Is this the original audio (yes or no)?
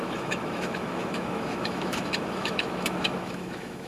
no